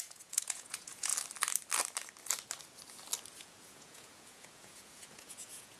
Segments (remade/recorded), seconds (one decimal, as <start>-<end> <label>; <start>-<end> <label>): 0.0-1.1 remade; 1.1-3.4 recorded; 3.4-5.8 remade